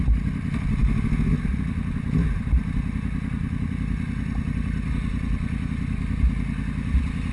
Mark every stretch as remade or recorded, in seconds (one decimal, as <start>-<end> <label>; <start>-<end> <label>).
0.0-7.3 recorded